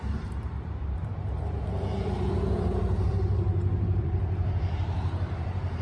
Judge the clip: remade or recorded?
remade